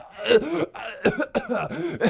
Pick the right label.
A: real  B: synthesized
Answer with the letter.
A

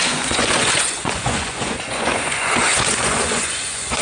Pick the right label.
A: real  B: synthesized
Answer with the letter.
B